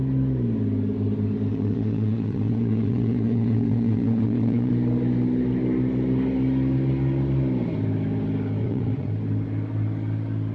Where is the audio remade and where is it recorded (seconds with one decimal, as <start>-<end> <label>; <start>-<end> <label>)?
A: 0.0-1.5 recorded; 1.5-4.7 remade; 4.7-8.6 recorded; 8.6-9.1 remade; 9.1-10.5 recorded